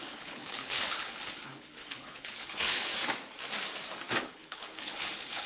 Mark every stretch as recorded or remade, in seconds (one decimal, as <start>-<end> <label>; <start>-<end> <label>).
0.0-2.9 remade; 2.9-4.2 recorded; 4.2-5.5 remade